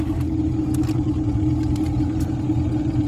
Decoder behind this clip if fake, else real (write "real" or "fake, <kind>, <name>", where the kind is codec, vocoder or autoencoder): real